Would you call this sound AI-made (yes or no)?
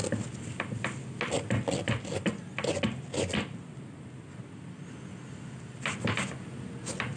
no